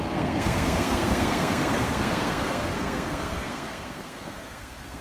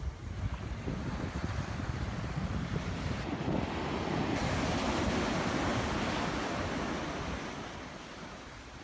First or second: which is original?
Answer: second